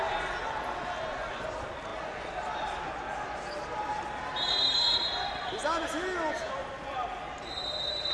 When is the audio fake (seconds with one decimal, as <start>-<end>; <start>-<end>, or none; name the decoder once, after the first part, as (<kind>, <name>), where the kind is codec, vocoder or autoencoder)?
none